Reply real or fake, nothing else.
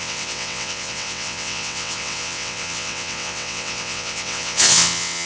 fake